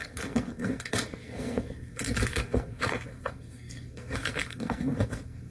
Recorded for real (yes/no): no